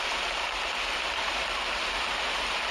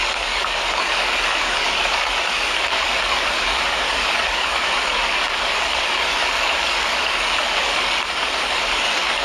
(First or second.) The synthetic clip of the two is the second